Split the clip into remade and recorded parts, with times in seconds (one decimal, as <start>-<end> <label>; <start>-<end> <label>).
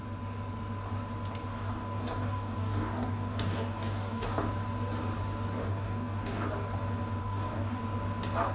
0.0-1.5 recorded; 1.5-4.3 remade; 4.3-5.6 recorded; 5.6-6.5 remade; 6.5-7.2 recorded; 7.2-7.8 remade; 7.8-8.5 recorded